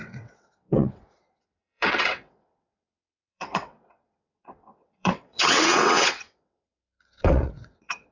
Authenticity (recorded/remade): remade